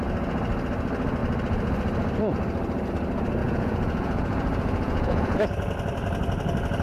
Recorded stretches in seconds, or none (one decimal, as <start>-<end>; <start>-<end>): 0.0-3.4; 5.4-6.8